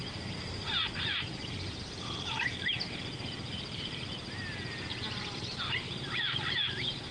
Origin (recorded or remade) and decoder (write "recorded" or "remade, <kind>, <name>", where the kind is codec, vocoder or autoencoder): remade, vocoder, BigVGAN v2